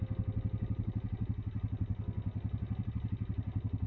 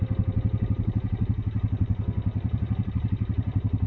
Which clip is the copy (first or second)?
second